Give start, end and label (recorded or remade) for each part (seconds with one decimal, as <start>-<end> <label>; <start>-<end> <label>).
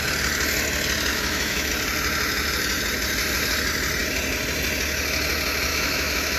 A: 0.0-1.1 recorded; 1.1-1.7 remade; 1.7-5.7 recorded; 5.7-6.4 remade